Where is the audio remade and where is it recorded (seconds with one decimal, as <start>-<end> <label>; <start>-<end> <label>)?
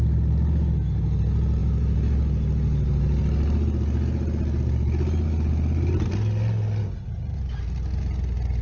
0.0-8.6 recorded